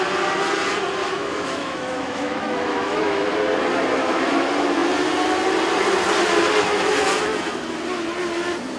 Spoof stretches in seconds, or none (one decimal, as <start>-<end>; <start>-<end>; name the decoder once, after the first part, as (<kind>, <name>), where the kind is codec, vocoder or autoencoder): 1.0-3.3 (autoencoder, DAC-VAE)